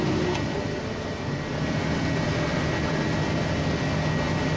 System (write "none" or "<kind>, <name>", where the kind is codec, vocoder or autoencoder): none